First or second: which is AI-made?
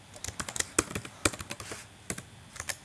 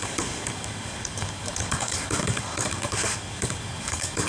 second